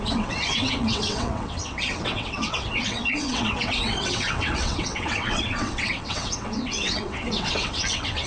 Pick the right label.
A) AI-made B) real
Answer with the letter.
A